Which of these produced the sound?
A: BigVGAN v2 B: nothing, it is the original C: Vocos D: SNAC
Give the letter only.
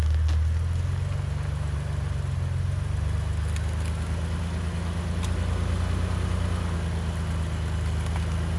B